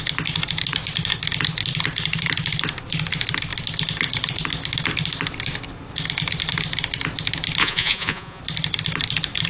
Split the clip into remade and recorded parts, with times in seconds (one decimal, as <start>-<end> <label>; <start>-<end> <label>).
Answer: 0.0-7.6 recorded; 7.6-8.4 remade; 8.4-9.5 recorded